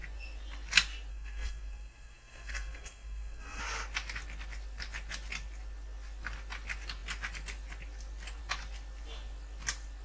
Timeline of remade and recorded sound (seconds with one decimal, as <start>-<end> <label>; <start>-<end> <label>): 0.0-1.1 recorded; 1.1-3.6 remade; 3.6-10.0 recorded